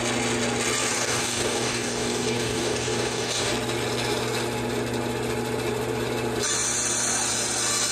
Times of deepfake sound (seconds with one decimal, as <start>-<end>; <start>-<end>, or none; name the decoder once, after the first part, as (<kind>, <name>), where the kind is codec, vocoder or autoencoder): 0.9-3.5 (codec, DAC)